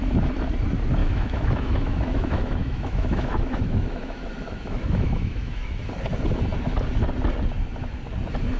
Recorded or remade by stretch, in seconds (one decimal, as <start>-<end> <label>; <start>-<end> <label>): 0.0-1.0 recorded; 1.0-5.7 remade; 5.7-8.6 recorded